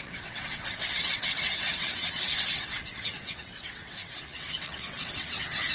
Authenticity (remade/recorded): remade